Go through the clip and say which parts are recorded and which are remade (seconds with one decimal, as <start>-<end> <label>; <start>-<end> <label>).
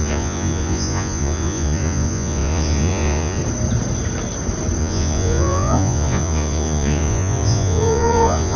0.0-3.4 remade; 3.4-4.8 recorded; 4.8-8.6 remade